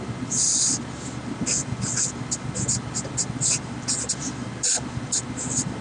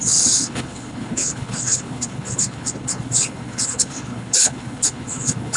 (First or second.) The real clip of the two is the first